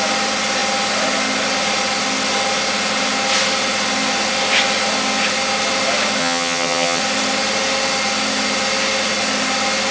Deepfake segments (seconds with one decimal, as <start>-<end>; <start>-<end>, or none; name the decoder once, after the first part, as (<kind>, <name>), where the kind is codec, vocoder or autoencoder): 6.2-7.0 (vocoder, HiFi-GAN)